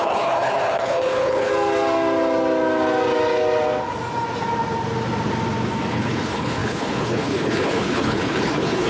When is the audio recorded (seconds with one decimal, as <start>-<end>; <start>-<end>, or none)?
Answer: 1.5-5.9